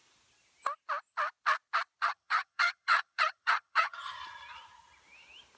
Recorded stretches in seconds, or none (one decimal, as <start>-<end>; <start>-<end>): 0.0-2.0; 4.1-5.6